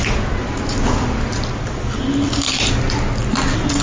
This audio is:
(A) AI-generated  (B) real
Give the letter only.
B